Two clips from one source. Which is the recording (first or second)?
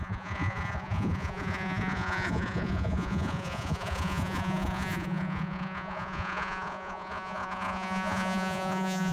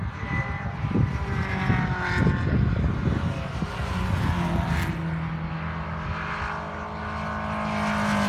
second